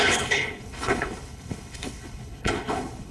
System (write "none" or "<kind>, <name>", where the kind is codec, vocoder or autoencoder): codec, HILCodec